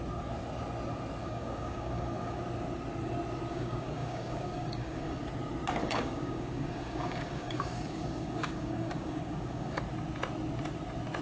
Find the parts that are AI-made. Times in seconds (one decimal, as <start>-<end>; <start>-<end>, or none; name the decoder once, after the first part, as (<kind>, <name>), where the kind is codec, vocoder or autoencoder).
1.2-2.4 (codec, DAC); 3.5-5.2; 5.8-9.8